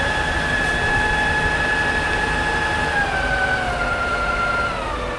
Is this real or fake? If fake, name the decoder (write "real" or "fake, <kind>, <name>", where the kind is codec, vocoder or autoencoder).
real